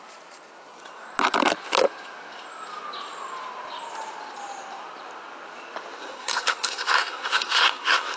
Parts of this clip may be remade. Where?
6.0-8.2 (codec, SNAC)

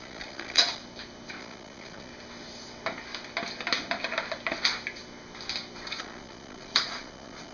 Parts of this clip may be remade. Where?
0.0-0.8 (vocoder, Vocos); 1.4-2.1; 6.0-7.5

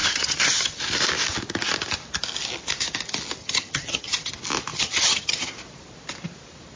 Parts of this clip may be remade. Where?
0.0-0.8 (vocoder, HiFi-GAN); 3.4-4.3; 4.7-5.5

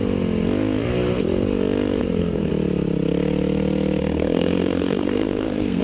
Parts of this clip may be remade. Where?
2.0-2.5 (codec, SNAC); 4.0-5.8

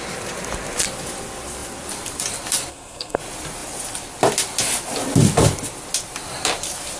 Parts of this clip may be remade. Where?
2.7-3.2 (codec, SNAC)

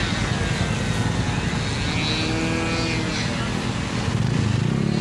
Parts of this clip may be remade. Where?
3.1-3.7 (vocoder, BigVGAN v2)